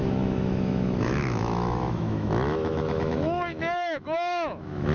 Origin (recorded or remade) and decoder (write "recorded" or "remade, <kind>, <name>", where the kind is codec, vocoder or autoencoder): remade, autoencoder, DAC-VAE